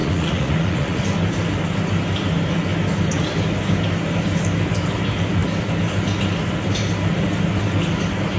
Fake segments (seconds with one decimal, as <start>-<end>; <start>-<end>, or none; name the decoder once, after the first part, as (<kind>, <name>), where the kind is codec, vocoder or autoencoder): 0.0-1.0 (vocoder, Vocos)